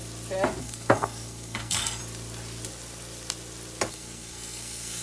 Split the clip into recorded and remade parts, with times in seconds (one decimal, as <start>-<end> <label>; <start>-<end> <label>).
0.0-0.6 recorded; 0.6-2.0 remade; 2.0-3.9 recorded; 3.9-5.0 remade